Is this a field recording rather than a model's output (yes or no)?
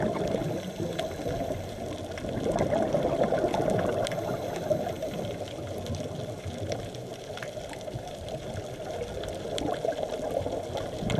yes